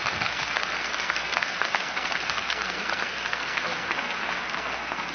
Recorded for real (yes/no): no